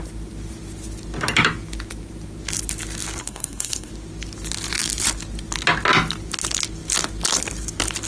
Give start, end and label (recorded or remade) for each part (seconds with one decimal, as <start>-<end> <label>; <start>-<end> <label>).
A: 0.0-3.2 recorded; 3.2-3.9 remade; 3.9-8.1 recorded